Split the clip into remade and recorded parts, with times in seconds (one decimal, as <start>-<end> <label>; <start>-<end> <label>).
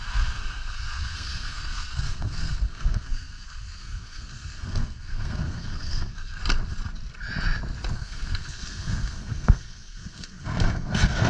0.0-6.4 remade; 6.4-7.9 recorded; 7.9-11.3 remade